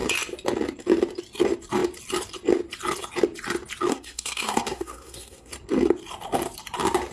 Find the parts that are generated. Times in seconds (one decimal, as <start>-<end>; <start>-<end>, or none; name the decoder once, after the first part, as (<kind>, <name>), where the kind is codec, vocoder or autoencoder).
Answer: 3.9-5.5 (codec, SNAC)